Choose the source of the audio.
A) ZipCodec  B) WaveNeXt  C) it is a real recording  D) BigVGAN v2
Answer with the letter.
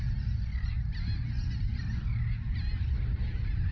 C